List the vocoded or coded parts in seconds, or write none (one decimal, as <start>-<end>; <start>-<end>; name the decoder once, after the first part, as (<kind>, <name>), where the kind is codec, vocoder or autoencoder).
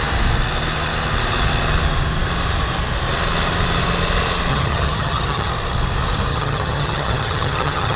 4.5-5.5 (vocoder, HiFi-GAN); 6.3-8.0